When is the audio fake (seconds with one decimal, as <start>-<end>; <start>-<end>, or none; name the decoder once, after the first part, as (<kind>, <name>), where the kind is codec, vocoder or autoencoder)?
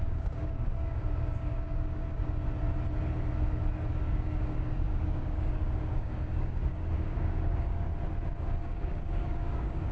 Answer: 0.0-2.2 (codec, DAC); 3.9-7.9; 8.6-9.9